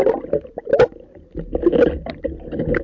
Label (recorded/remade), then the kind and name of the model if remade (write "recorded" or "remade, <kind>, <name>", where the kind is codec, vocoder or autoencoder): recorded